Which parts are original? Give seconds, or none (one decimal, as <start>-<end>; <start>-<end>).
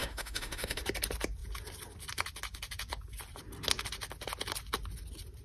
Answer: 0.8-5.4